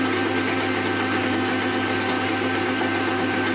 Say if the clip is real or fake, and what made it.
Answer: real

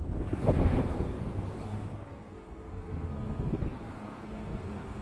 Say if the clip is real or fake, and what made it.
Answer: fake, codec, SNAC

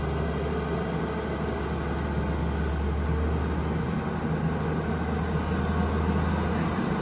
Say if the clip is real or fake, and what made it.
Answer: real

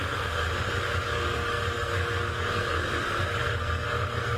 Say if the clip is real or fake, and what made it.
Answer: fake, codec, SNAC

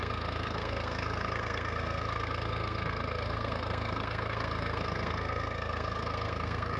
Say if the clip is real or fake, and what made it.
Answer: fake, codec, SNAC